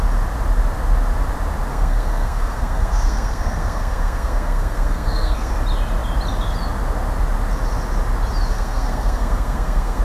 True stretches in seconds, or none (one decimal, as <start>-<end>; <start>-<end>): 0.0-1.7; 5.5-8.5

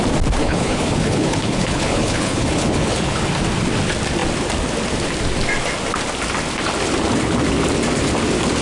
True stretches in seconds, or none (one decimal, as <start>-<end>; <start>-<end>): 0.0-0.4; 3.3-8.6

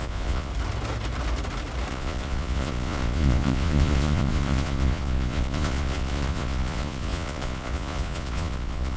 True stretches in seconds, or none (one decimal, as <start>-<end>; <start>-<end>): 0.5-1.9